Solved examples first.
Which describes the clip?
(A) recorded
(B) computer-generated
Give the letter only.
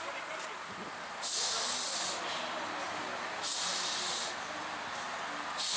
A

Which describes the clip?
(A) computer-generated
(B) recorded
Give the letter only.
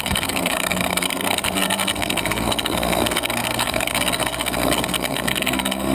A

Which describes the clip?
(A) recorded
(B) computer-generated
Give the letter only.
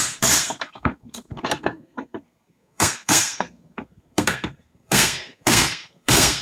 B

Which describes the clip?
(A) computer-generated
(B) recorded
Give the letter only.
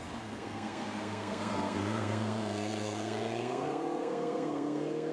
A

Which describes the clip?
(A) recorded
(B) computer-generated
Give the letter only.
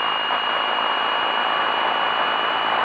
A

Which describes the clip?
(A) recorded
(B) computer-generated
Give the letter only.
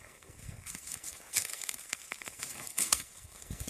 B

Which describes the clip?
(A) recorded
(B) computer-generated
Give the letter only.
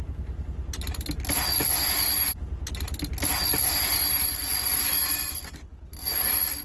A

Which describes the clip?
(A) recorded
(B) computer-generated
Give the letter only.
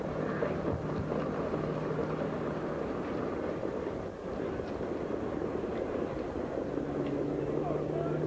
A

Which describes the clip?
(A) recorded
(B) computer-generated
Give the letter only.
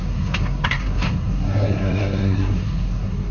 B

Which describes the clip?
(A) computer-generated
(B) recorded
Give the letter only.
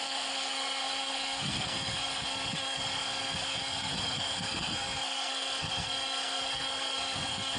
A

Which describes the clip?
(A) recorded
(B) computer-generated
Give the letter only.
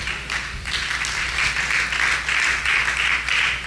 A